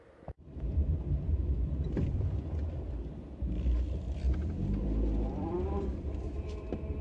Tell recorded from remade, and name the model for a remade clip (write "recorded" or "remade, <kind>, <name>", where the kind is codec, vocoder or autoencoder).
remade, vocoder, BigVGAN v2